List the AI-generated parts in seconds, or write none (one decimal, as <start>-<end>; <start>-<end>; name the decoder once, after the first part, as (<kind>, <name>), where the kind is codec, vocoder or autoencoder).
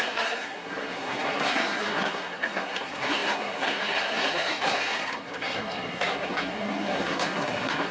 0.0-7.9 (codec, SNAC)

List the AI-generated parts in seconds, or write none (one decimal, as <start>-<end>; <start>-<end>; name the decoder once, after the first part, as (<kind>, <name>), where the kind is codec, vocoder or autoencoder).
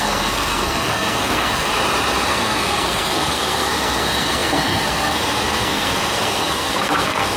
0.0-1.7 (codec, SNAC); 2.3-7.4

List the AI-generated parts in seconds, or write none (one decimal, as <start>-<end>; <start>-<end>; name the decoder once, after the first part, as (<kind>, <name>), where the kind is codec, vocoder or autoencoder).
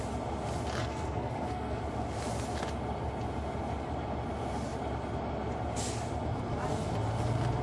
0.8-1.8 (codec, SNAC)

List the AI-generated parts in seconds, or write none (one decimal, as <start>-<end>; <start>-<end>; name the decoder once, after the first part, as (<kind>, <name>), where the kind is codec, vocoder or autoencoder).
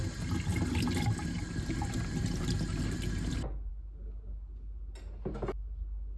none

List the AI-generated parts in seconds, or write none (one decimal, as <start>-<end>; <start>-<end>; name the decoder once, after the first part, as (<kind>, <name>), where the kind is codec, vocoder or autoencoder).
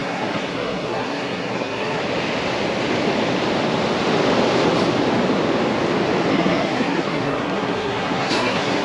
0.0-2.0 (codec, SNAC); 6.3-8.8